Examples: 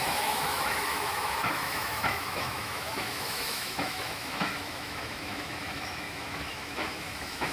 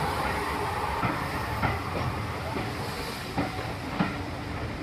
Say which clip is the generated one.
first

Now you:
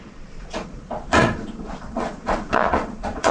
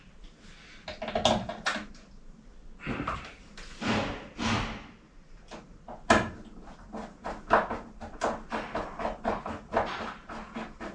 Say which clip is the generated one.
first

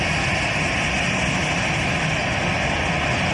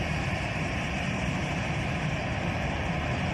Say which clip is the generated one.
second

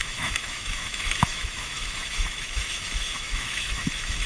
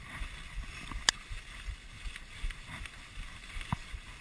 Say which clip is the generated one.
first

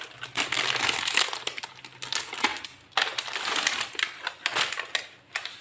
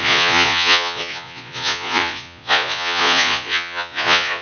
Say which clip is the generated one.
second